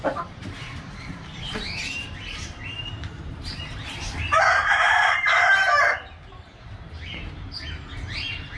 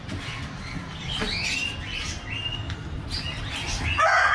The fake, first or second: first